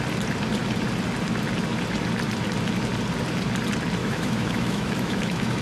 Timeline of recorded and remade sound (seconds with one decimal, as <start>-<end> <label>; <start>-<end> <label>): 0.0-4.0 recorded; 4.0-5.6 remade